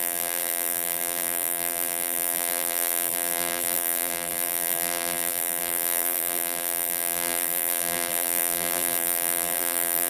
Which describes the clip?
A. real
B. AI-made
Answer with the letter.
B